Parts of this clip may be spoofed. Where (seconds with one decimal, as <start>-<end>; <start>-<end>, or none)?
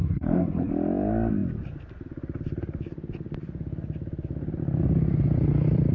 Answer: 0.0-0.7